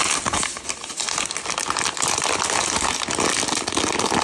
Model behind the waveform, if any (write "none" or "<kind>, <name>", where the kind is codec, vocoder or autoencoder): none